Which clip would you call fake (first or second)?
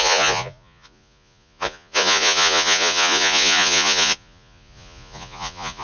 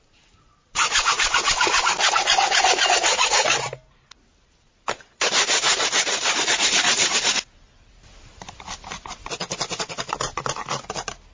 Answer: first